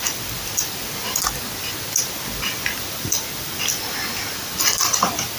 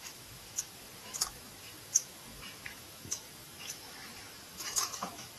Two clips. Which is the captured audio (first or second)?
first